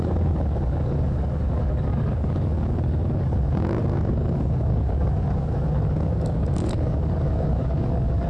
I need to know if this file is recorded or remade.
remade